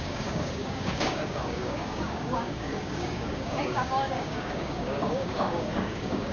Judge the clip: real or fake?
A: fake